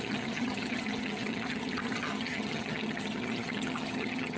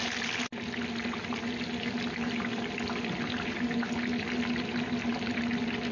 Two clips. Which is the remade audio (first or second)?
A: first